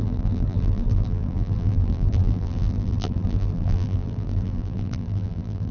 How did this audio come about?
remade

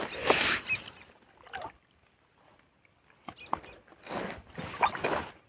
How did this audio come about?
recorded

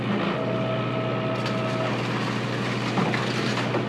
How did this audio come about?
recorded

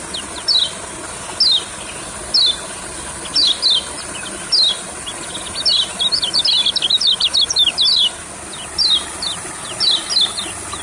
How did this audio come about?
recorded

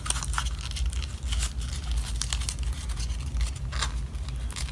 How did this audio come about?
recorded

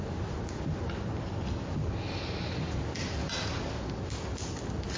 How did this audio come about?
recorded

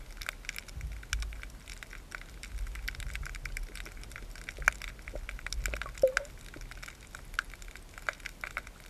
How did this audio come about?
recorded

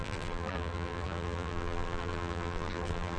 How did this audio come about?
remade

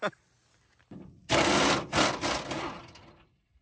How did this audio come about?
recorded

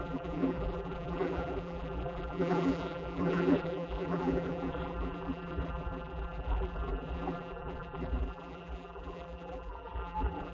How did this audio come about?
remade